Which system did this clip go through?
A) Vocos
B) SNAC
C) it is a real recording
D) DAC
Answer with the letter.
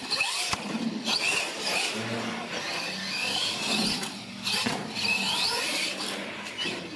C